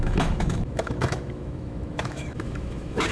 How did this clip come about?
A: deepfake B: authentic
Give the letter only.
A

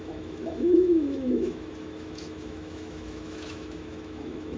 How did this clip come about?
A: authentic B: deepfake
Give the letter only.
B